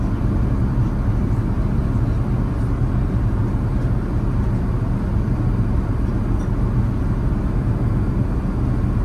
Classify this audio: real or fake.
real